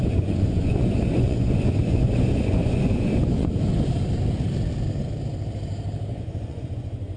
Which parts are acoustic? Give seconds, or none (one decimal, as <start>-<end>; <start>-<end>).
3.5-6.1